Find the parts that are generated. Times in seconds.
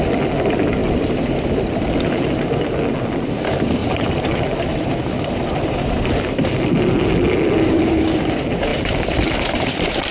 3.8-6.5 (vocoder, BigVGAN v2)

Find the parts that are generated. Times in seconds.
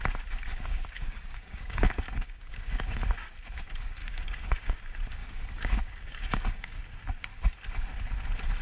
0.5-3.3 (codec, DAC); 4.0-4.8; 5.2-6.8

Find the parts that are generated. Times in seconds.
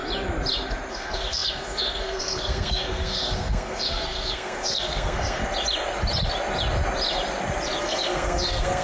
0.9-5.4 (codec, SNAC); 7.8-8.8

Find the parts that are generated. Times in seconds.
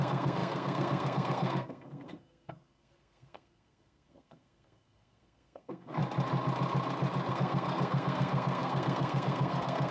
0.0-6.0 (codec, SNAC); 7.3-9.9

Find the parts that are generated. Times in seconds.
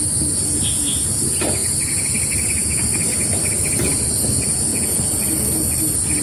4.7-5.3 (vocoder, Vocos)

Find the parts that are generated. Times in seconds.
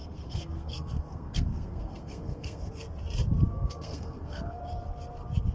0.0-2.7 (codec, SNAC); 3.5-4.6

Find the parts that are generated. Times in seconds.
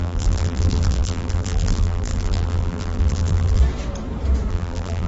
0.0-3.6 (vocoder, BigVGAN v2); 4.5-5.1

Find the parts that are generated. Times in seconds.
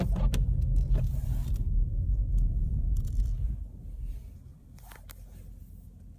none